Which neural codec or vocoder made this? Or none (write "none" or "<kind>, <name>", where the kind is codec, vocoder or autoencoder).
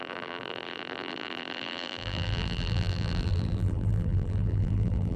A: vocoder, BigVGAN v2